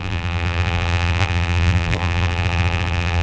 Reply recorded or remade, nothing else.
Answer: remade